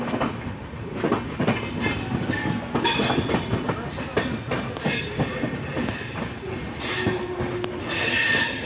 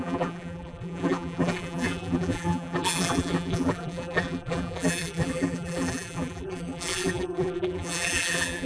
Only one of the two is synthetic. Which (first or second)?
second